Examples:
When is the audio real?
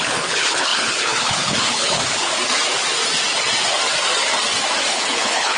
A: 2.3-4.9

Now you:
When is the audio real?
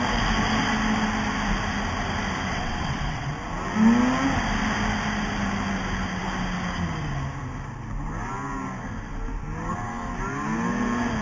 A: 0.0-2.5; 3.3-11.2